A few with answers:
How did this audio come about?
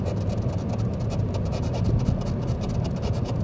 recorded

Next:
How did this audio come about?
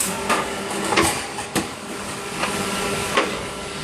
remade